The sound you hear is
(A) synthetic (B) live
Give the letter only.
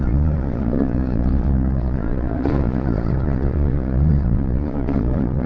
A